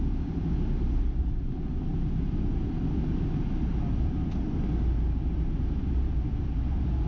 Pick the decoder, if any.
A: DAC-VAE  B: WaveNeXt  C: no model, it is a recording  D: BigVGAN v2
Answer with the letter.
C